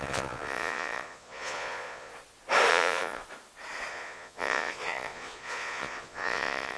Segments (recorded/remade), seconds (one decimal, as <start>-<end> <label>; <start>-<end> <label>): 0.0-2.1 remade; 2.1-2.7 recorded; 2.7-3.2 remade; 3.2-3.9 recorded; 3.9-6.8 remade